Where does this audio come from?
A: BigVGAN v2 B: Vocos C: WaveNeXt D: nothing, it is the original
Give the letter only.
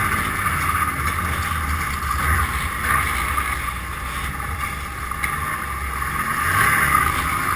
D